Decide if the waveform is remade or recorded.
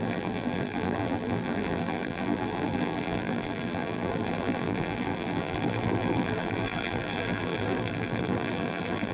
remade